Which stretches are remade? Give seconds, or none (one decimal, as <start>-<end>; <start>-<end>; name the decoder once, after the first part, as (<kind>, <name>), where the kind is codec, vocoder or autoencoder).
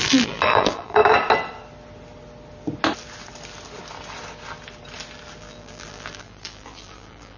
0.0-1.0 (vocoder, BigVGAN v2); 5.4-7.4